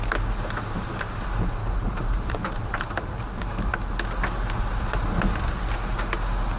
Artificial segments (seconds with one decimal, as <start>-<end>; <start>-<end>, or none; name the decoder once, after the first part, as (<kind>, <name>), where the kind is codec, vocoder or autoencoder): 1.6-3.1 (vocoder, BigVGAN v2)